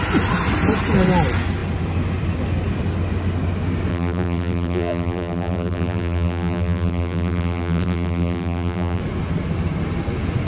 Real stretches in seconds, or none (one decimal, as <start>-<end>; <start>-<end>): 0.0-3.9; 9.0-10.5